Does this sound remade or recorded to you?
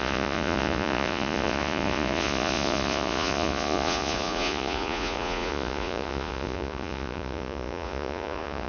remade